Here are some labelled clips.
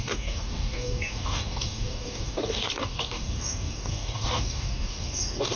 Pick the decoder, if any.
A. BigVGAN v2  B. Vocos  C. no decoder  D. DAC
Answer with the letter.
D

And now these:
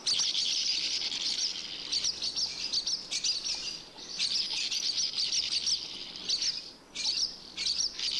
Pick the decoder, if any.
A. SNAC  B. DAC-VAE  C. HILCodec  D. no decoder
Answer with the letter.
D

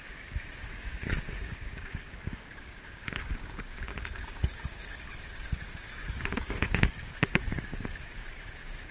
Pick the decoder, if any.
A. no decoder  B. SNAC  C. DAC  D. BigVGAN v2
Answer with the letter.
C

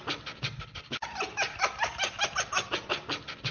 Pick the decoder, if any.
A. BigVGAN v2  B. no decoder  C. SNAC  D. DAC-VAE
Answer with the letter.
B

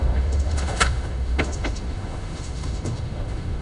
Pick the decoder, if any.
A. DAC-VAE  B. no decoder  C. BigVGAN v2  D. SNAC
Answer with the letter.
A